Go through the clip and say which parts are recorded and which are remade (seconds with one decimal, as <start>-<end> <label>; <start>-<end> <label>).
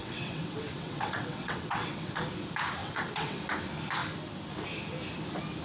0.0-2.2 remade; 2.2-2.8 recorded; 2.8-3.4 remade; 3.4-5.6 recorded